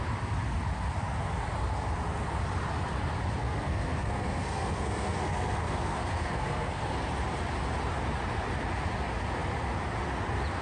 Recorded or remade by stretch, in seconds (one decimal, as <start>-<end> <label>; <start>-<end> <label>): 0.0-3.4 recorded; 3.4-6.8 remade; 6.8-10.6 recorded